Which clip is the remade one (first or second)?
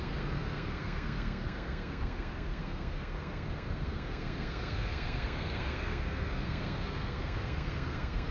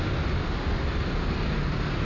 first